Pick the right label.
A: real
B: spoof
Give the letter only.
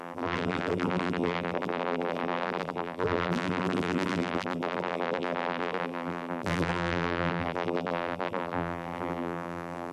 B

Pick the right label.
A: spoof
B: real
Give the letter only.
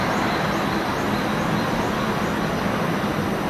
B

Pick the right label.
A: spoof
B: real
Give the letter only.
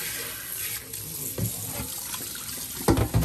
B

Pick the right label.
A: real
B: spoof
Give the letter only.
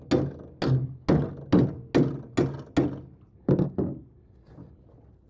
A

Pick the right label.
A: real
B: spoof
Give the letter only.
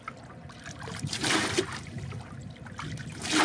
A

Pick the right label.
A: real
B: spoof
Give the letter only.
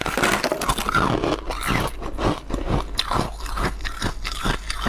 A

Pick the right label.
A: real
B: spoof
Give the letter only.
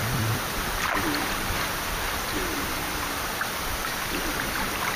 B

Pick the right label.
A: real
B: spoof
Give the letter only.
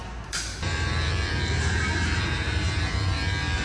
B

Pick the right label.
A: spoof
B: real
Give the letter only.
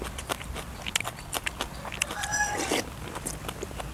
A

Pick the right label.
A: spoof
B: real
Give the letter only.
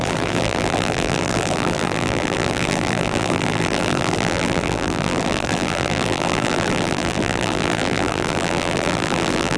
A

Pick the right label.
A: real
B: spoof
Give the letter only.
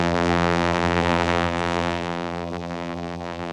B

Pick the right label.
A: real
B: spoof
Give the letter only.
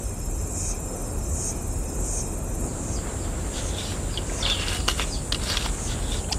A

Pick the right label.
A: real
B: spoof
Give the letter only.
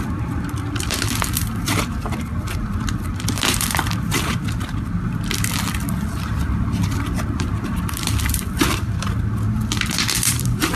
B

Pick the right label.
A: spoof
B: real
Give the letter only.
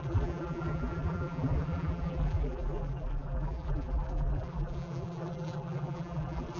A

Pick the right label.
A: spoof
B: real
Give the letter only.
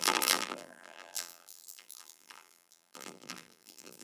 A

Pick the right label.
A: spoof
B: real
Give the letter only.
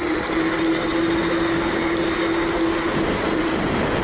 B